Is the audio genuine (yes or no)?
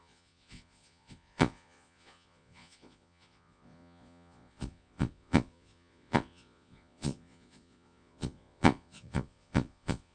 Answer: no